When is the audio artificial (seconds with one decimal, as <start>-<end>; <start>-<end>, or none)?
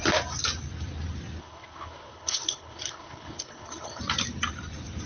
1.4-4.0